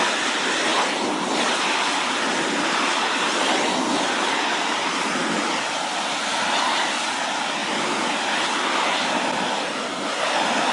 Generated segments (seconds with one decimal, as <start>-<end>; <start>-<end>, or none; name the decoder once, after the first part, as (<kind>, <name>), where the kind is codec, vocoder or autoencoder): none